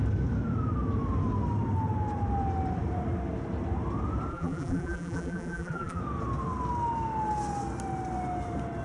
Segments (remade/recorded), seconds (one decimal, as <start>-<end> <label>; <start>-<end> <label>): 0.0-4.3 recorded; 4.3-6.0 remade; 6.0-8.8 recorded